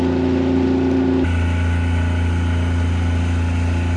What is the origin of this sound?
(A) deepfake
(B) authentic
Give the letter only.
B